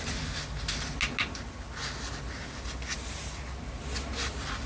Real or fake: real